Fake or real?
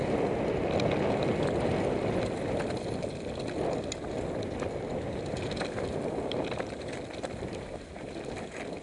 real